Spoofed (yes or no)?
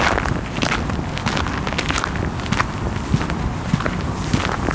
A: no